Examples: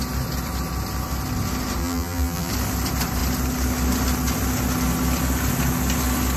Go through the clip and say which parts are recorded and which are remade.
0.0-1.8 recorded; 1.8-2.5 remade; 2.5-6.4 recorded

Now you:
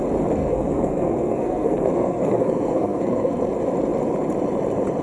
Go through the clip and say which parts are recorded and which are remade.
0.0-0.4 recorded; 0.4-3.4 remade; 3.4-5.0 recorded

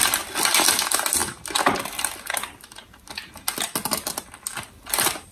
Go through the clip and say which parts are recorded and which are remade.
0.0-5.3 recorded

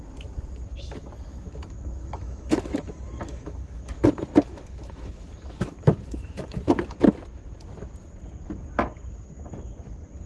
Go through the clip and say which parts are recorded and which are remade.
0.0-1.3 recorded; 1.3-4.0 remade; 4.0-4.5 recorded; 4.5-6.6 remade; 6.6-10.3 recorded

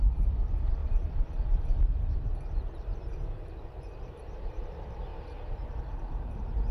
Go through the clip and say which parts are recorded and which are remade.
0.0-0.8 remade; 0.8-1.8 recorded; 1.8-6.7 remade

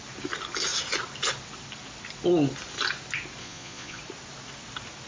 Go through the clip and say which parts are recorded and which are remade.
0.0-3.4 recorded; 3.4-4.0 remade; 4.0-5.1 recorded

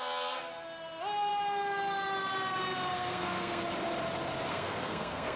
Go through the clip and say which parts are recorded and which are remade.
0.0-2.9 recorded; 2.9-3.6 remade; 3.6-4.5 recorded; 4.5-5.4 remade

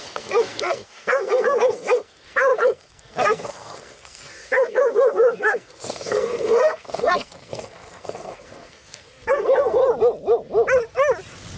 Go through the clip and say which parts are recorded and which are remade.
0.0-9.8 remade; 9.8-11.6 recorded